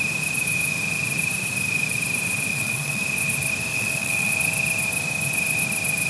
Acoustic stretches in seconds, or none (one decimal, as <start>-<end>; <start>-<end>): 0.0-2.5; 3.0-3.7; 4.3-6.1